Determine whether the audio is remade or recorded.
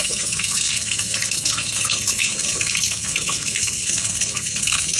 remade